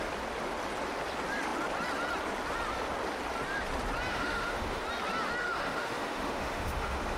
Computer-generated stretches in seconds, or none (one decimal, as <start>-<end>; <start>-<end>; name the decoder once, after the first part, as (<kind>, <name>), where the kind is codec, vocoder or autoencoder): 4.1-4.8 (autoencoder, DAC-VAE); 5.4-7.2